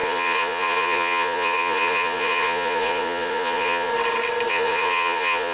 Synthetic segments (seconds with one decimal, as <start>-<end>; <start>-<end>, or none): 0.0-3.9; 4.5-5.5